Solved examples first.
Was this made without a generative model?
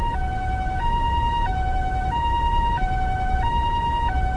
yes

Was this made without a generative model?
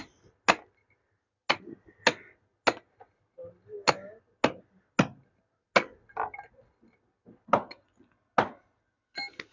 yes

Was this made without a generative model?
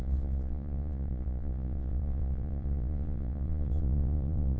no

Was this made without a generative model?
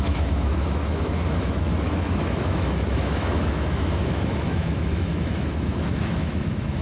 no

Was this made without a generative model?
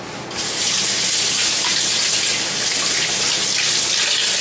yes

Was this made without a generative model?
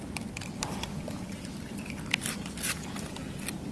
yes